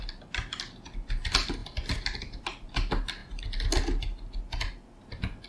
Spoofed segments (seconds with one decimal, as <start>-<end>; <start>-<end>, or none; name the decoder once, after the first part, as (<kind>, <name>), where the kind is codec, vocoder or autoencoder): none